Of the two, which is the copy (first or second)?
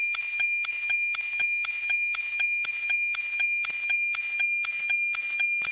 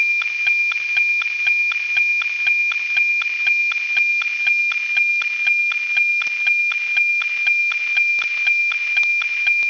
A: first